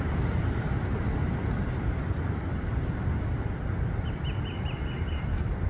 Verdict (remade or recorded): recorded